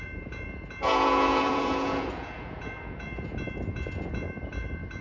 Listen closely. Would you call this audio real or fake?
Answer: fake